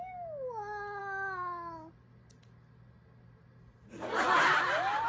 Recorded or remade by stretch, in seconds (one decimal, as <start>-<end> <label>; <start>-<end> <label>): 0.0-5.1 recorded